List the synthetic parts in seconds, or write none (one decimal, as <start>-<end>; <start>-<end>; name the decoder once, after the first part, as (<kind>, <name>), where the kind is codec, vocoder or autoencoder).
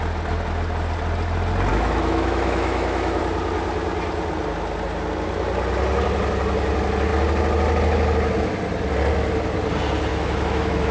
1.7-3.2 (autoencoder, DAC-VAE); 10.1-10.9